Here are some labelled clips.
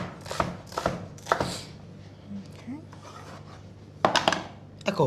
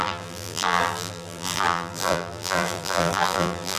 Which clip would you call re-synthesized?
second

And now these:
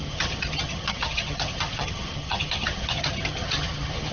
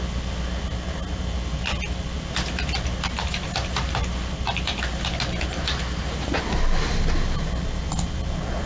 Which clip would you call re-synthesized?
first